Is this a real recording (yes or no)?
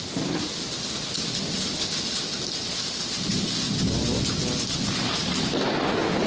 yes